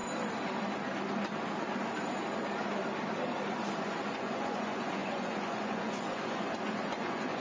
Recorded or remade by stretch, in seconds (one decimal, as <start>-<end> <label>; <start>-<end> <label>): 0.0-3.8 recorded; 3.8-7.4 remade